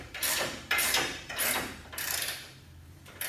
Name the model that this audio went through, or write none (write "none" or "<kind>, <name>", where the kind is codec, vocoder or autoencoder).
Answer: vocoder, BigVGAN v2